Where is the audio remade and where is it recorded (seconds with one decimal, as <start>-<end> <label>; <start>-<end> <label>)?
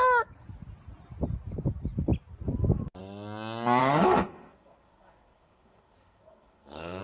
0.0-3.8 recorded; 3.8-7.0 remade